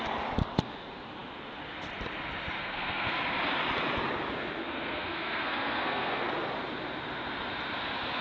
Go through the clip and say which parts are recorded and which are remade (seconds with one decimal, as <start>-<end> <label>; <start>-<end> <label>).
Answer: 0.0-2.6 recorded; 2.6-3.2 remade; 3.2-4.6 recorded; 4.6-6.3 remade; 6.3-8.2 recorded